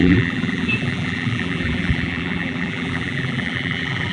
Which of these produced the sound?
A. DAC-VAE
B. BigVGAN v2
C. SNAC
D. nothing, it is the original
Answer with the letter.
B